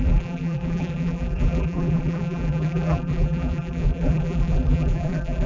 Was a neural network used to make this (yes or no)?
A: yes